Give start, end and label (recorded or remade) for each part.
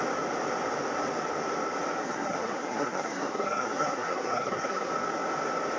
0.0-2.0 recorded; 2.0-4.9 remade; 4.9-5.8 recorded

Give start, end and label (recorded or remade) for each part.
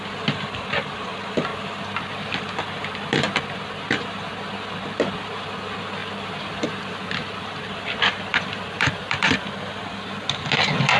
0.0-1.5 recorded; 1.5-3.6 remade; 3.6-6.0 recorded; 6.0-7.8 remade; 7.8-8.3 recorded; 8.3-9.4 remade; 9.4-11.0 recorded